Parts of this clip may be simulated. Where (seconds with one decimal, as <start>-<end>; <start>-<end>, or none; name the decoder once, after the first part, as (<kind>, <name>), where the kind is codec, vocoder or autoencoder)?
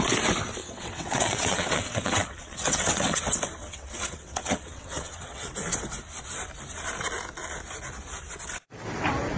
0.6-3.2 (vocoder, WaveNeXt); 3.6-5.5